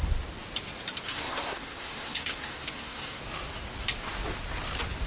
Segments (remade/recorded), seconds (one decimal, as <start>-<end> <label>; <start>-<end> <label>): 0.0-1.1 recorded; 1.1-3.2 remade; 3.2-5.1 recorded